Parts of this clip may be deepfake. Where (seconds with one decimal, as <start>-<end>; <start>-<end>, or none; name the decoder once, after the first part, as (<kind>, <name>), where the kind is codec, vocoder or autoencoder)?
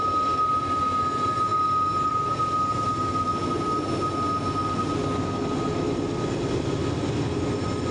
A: none